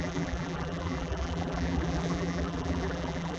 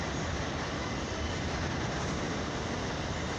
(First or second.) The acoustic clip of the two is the second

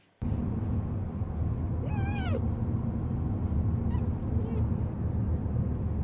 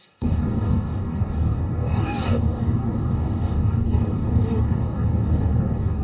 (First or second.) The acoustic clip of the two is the first